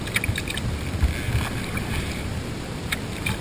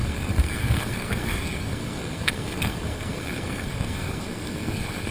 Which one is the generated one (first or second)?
second